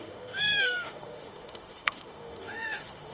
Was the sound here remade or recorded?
remade